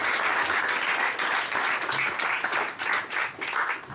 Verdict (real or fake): real